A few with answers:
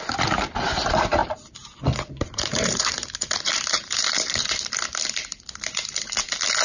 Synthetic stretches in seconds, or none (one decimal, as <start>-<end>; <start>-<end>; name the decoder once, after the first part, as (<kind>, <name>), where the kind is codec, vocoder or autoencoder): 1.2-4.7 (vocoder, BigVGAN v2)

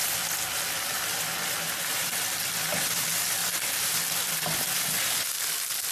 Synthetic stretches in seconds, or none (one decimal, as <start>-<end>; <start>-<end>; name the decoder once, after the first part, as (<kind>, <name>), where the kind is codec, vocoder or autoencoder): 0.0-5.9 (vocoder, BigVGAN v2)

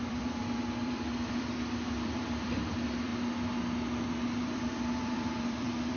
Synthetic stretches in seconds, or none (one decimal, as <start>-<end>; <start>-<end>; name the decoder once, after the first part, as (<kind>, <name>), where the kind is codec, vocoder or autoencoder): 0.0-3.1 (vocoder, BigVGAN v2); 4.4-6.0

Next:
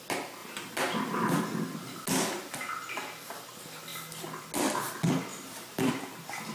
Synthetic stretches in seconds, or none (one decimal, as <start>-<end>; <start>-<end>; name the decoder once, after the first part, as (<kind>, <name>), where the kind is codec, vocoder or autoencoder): 5.3-5.9 (vocoder, BigVGAN v2)

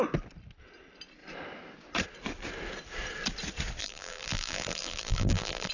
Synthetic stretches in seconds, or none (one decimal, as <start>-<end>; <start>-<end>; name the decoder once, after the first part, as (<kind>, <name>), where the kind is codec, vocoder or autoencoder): 3.8-5.7 (vocoder, BigVGAN v2)

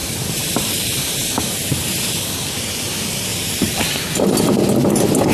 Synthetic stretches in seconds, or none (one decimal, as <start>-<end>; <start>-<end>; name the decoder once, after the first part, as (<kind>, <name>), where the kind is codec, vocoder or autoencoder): 0.0-2.1 (vocoder, BigVGAN v2); 3.3-4.6